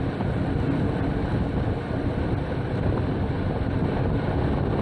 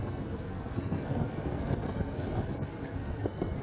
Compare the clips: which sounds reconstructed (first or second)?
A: second